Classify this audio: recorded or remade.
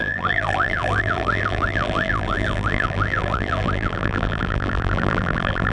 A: remade